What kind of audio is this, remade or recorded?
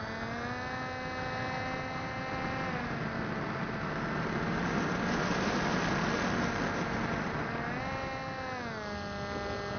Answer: recorded